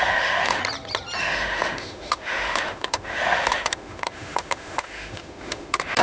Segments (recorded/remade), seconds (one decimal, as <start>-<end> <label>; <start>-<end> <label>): 0.0-0.6 remade; 0.6-1.2 recorded; 1.2-6.0 remade